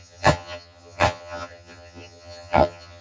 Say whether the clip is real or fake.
fake